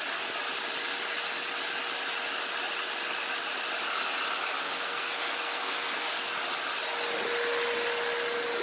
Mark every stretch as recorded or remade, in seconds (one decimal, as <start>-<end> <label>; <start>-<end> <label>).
0.0-4.6 recorded; 4.6-6.3 remade; 6.3-8.6 recorded

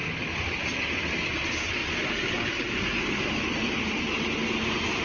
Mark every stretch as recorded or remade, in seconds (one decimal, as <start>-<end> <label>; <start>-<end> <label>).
0.0-0.6 remade; 0.6-1.8 recorded; 1.8-3.3 remade; 3.3-5.0 recorded

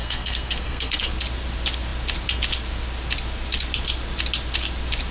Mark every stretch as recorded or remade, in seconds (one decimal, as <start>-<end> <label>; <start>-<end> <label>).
0.0-1.1 remade; 1.1-5.1 recorded

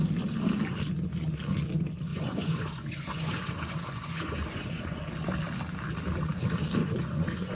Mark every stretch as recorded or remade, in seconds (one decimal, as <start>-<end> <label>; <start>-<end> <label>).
0.0-2.1 recorded; 2.1-5.0 remade; 5.0-6.8 recorded; 6.8-7.5 remade

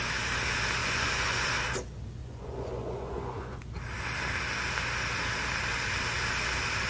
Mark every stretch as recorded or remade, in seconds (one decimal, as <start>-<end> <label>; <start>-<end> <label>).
0.0-0.8 recorded; 0.8-1.5 remade; 1.5-2.2 recorded; 2.2-3.6 remade; 3.6-6.9 recorded